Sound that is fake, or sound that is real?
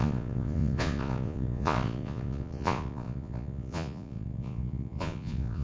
fake